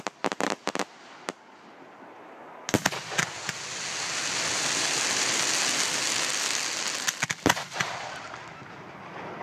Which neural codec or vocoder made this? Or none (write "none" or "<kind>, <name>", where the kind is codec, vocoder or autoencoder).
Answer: none